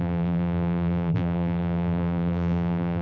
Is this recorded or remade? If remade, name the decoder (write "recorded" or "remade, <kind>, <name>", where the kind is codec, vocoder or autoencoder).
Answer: remade, vocoder, BigVGAN v2